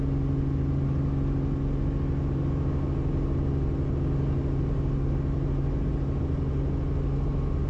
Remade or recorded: recorded